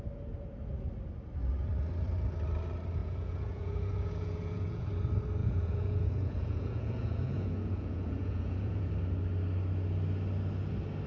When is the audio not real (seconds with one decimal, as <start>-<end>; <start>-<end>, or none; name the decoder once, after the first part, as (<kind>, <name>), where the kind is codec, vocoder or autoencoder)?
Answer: 3.0-4.9 (vocoder, Vocos); 5.4-8.9